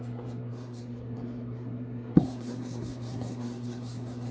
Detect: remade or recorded remade